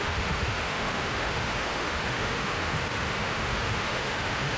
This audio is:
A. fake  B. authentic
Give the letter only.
A